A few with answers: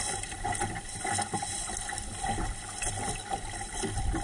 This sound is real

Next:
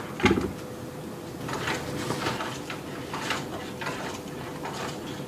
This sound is real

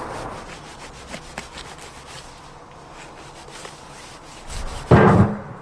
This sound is real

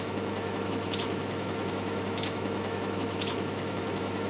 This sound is fake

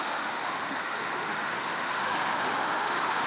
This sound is fake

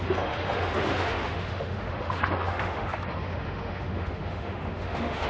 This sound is fake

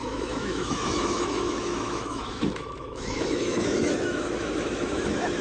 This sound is fake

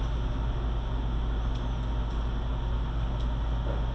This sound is real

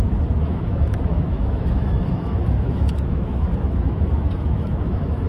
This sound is fake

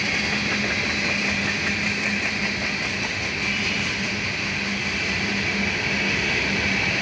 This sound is real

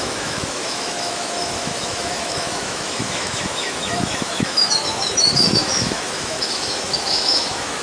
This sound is fake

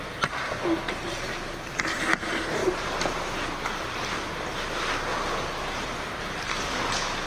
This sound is real